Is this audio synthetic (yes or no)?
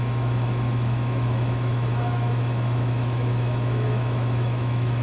yes